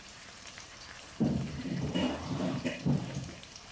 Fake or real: fake